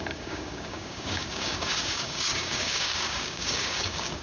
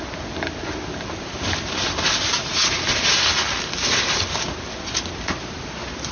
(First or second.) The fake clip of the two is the first